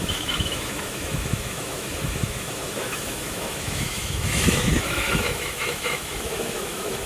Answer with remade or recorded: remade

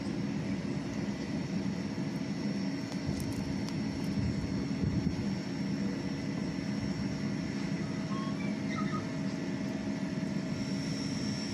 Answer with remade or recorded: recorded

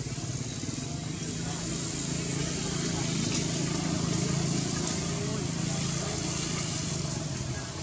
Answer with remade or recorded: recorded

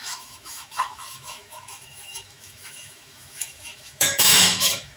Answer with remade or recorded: remade